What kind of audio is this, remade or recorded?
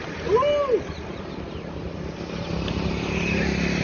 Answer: recorded